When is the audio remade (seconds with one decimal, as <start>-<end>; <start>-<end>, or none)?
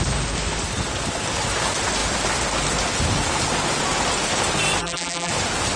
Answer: 4.8-5.3